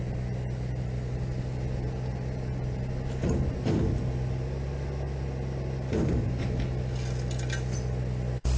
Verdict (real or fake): real